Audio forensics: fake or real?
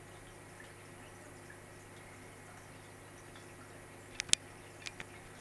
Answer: real